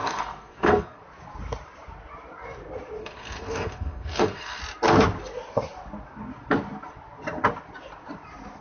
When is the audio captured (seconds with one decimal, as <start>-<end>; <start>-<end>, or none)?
1.0-3.0; 4.6-8.6